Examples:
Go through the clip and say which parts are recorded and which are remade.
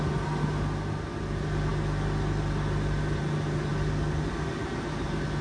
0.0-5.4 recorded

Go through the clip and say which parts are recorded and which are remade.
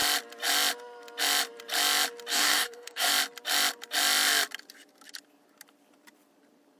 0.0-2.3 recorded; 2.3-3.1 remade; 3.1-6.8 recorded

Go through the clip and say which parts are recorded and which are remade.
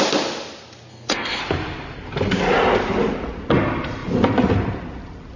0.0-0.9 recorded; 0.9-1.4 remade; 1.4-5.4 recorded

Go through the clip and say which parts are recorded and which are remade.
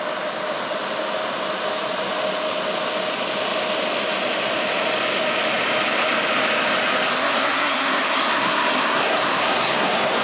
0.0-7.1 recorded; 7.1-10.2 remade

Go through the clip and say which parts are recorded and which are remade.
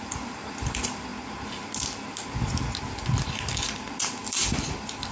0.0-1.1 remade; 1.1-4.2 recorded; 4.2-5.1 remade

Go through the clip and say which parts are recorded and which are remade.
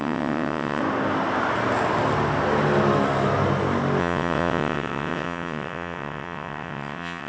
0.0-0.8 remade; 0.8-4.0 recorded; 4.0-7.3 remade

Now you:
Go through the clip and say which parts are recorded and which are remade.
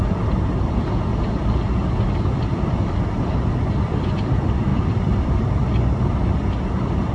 0.0-1.1 remade; 1.1-3.5 recorded; 3.5-4.7 remade; 4.7-6.0 recorded; 6.0-7.1 remade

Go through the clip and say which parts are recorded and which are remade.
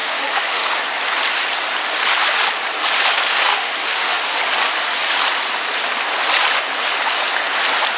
0.0-0.8 remade; 0.8-3.5 recorded; 3.5-4.4 remade; 4.4-8.0 recorded